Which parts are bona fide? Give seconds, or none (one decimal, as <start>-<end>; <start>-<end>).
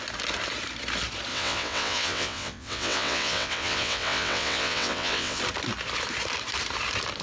0.0-1.3; 5.4-7.2